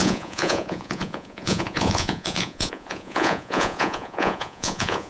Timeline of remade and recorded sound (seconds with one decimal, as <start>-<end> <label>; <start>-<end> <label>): 0.0-5.1 remade

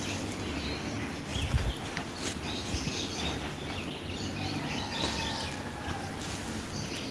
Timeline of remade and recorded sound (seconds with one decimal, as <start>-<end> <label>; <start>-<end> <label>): 0.0-7.1 recorded

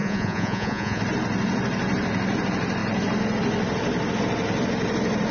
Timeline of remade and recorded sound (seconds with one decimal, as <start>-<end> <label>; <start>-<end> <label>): 0.0-1.0 remade; 1.0-5.3 recorded

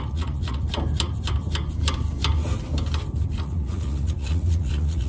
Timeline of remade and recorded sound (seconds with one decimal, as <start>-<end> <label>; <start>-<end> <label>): 0.0-0.7 remade; 0.7-3.4 recorded; 3.4-5.1 remade

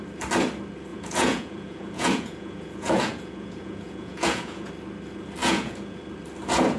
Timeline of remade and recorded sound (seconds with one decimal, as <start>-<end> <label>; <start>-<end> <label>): 0.0-0.9 recorded; 0.9-4.7 remade; 4.7-5.4 recorded; 5.4-6.0 remade; 6.0-6.8 recorded

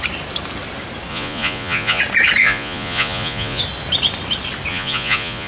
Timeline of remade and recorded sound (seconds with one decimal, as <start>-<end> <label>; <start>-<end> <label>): 0.0-1.1 recorded; 1.1-2.0 remade; 2.0-2.4 recorded; 2.4-3.6 remade; 3.6-4.7 recorded; 4.7-5.5 remade